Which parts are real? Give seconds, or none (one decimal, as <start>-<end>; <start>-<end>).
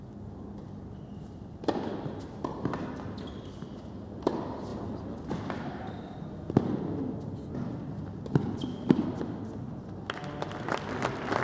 0.0-11.4